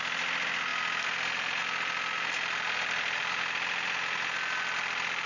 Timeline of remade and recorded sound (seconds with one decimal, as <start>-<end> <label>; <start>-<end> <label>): 0.0-5.3 recorded